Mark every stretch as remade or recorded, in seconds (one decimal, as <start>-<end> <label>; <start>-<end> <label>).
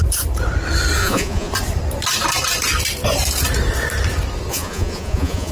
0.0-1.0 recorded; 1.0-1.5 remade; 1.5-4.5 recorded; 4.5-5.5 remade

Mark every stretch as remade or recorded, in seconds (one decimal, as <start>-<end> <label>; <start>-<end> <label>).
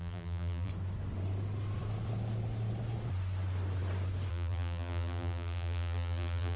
0.0-0.7 remade; 0.7-4.3 recorded; 4.3-6.6 remade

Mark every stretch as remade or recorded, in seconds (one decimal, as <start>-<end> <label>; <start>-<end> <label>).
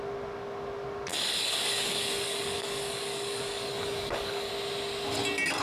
0.0-1.1 recorded; 1.1-4.5 remade; 4.5-5.6 recorded